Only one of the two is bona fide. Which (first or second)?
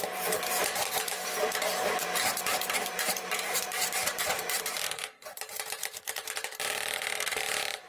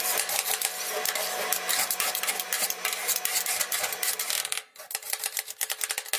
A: second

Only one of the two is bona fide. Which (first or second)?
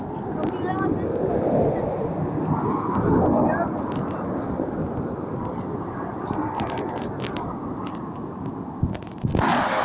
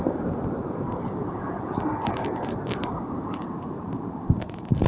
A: first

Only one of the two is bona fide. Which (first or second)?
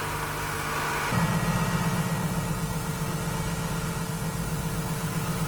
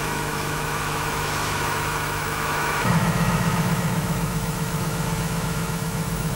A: first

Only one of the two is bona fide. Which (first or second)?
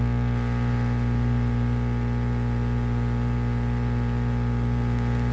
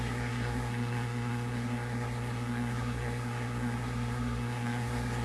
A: first